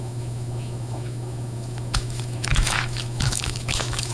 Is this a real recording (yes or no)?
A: no